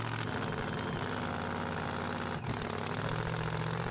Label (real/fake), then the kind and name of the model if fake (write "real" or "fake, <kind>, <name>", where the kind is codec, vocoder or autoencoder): real